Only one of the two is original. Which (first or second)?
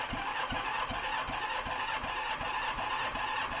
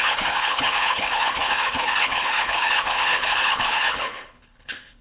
first